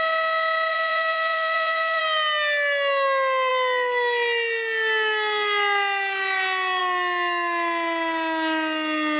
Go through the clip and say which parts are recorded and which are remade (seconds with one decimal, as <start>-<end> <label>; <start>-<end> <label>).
0.0-0.7 recorded; 0.7-2.0 remade; 2.0-9.2 recorded

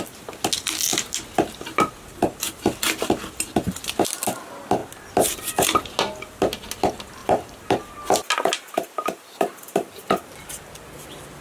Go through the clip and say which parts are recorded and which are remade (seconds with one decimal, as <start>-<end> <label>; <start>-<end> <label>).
0.0-7.2 recorded; 7.2-7.9 remade; 7.9-8.8 recorded; 8.8-9.9 remade; 9.9-11.4 recorded

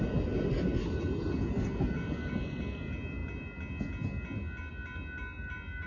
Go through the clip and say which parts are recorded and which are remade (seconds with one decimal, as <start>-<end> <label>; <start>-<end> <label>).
0.0-5.9 recorded

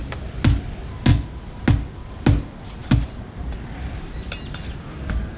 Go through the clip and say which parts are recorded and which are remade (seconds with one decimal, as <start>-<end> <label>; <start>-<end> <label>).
0.0-2.8 recorded; 2.8-4.4 remade; 4.4-5.4 recorded